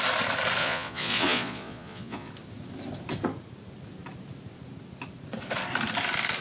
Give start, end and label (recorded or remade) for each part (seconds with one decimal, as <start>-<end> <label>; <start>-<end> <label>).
0.0-0.6 recorded; 0.6-2.3 remade; 2.3-6.4 recorded